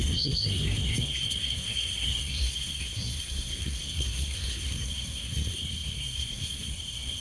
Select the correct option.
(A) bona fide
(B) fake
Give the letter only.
B